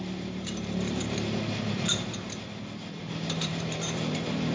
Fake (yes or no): yes